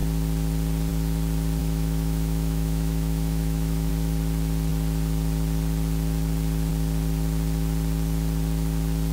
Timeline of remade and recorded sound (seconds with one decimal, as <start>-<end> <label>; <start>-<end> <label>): 0.0-1.6 recorded; 1.6-3.9 remade; 3.9-9.1 recorded